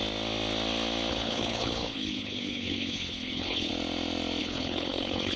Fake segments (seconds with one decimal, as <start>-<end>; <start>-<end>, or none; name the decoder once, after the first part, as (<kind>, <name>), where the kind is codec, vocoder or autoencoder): 1.1-3.7 (codec, HILCodec); 4.4-5.4